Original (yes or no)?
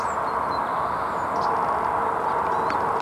yes